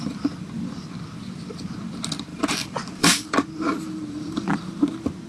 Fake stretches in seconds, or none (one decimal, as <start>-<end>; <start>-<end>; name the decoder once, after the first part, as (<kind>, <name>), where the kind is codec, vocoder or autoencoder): 2.3-4.5 (vocoder, BigVGAN v2)